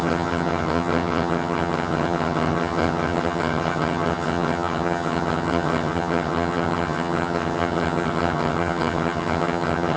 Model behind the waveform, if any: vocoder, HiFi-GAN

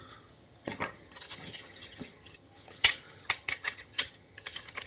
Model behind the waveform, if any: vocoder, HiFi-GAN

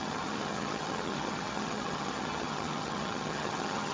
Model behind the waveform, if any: vocoder, HiFi-GAN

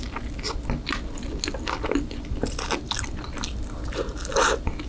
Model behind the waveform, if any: none